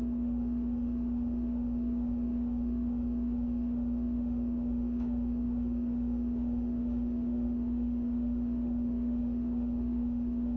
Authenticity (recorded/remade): remade